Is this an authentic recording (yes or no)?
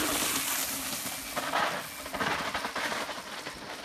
yes